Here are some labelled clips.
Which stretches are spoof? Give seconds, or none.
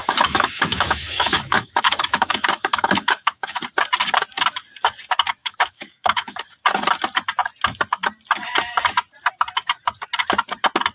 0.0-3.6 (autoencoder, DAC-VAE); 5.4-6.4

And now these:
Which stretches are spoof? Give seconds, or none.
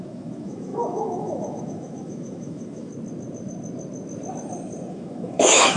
0.0-2.9 (autoencoder, DAC-VAE); 4.9-5.8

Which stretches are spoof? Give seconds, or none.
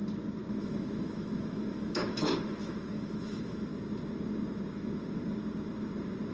0.6-3.7 (autoencoder, DAC-VAE)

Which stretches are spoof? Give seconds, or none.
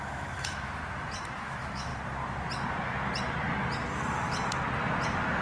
0.0-0.8 (autoencoder, DAC-VAE); 1.4-1.9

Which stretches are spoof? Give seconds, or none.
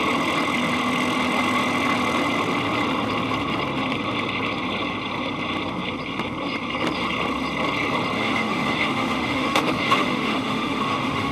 8.2-11.3 (autoencoder, DAC-VAE)